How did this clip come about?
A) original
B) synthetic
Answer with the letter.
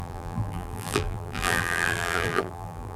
B